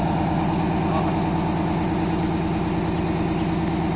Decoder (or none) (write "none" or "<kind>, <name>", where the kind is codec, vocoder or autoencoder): none